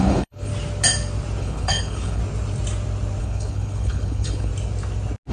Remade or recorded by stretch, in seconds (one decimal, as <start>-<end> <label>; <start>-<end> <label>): 0.0-0.5 remade; 0.5-1.4 recorded; 1.4-2.2 remade; 2.2-3.2 recorded; 3.2-4.5 remade; 4.5-5.3 recorded